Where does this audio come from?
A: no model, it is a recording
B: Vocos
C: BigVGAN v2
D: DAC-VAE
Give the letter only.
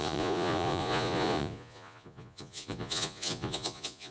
B